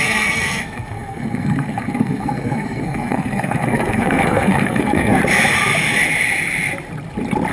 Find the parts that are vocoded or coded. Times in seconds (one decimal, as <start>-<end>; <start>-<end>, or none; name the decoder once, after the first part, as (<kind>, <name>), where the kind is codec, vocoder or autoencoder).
0.0-5.2 (codec, SNAC)